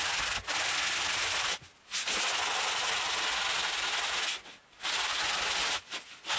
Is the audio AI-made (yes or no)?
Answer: no